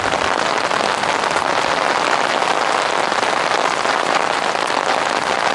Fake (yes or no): no